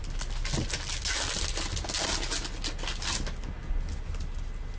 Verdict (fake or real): real